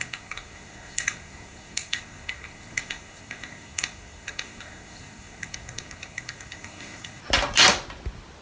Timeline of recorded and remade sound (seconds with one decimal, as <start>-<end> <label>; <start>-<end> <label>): 0.0-7.2 remade; 7.2-8.4 recorded